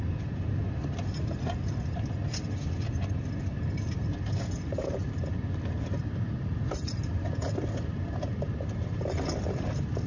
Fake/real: real